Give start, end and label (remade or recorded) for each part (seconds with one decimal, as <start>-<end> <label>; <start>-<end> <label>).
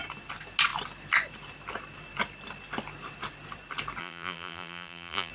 0.0-4.0 recorded; 4.0-5.3 remade